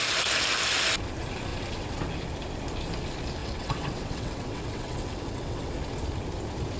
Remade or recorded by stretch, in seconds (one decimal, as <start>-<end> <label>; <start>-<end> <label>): 0.0-1.5 recorded; 1.5-2.1 remade; 2.1-3.4 recorded; 3.4-5.7 remade; 5.7-6.8 recorded

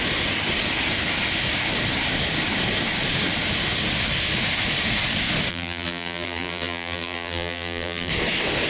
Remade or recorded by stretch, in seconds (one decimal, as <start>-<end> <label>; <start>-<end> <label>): 0.0-5.5 recorded; 5.5-8.1 remade; 8.1-8.7 recorded

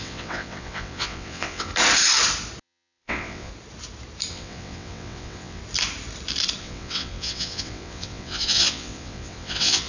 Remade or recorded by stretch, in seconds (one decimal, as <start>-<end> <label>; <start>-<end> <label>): 0.0-1.7 remade; 1.7-2.6 recorded; 2.6-3.5 remade; 3.5-4.3 recorded; 4.3-5.6 remade; 5.6-6.6 recorded; 6.6-9.9 remade

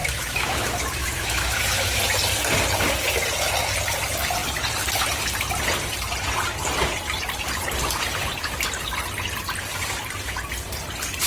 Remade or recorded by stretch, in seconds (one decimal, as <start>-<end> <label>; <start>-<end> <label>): 0.0-2.0 remade; 2.0-11.3 recorded

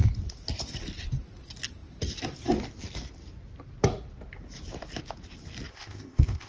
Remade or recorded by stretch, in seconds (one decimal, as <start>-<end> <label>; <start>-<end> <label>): 0.0-5.7 recorded; 5.7-6.5 remade